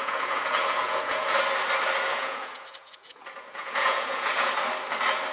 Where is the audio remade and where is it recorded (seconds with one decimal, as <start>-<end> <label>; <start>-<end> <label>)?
0.0-1.4 remade; 1.4-2.1 recorded; 2.1-4.5 remade; 4.5-5.3 recorded